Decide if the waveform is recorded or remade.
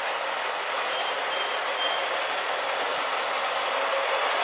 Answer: recorded